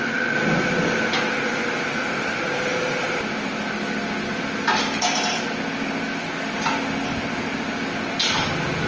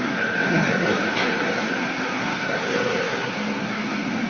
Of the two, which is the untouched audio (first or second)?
first